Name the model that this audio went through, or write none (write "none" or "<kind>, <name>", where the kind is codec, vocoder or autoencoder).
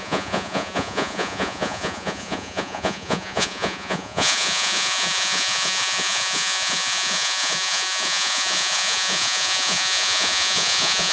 vocoder, Vocos